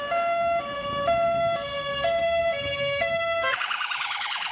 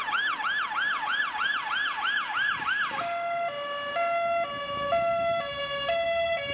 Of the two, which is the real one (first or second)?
second